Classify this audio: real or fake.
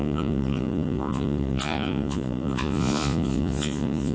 fake